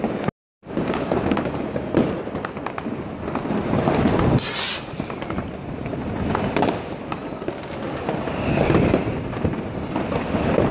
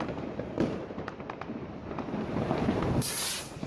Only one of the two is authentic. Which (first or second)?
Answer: first